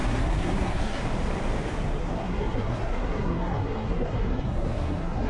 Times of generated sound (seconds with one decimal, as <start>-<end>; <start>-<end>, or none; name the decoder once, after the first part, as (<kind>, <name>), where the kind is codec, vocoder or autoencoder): 0.0-1.0 (codec, SNAC); 2.0-5.3